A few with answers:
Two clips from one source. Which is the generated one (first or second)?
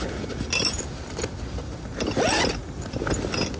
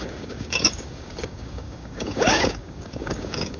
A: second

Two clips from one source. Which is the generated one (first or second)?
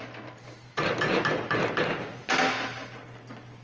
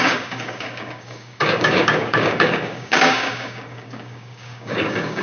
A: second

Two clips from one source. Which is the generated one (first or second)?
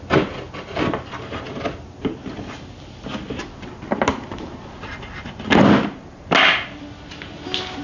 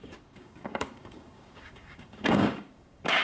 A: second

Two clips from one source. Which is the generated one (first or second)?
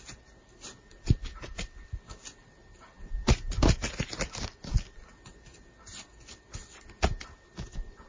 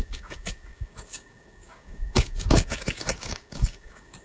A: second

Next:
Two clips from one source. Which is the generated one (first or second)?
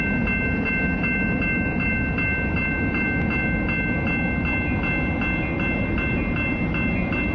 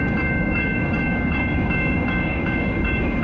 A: second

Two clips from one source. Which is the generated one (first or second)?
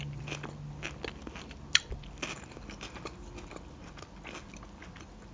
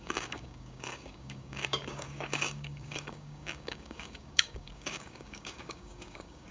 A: second